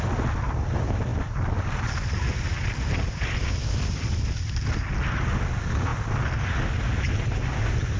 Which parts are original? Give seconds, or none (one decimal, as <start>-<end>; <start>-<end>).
0.0-1.1; 4.9-8.0